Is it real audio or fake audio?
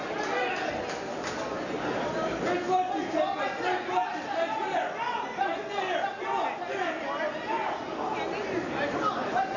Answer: real